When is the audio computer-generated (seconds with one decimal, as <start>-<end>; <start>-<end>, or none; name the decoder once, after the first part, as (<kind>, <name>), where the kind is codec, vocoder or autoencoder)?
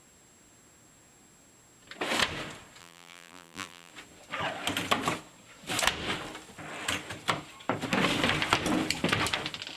2.8-3.9 (vocoder, BigVGAN v2)